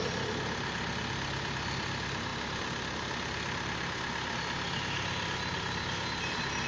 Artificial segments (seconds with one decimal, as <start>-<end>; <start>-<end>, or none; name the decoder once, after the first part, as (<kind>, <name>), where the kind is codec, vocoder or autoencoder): none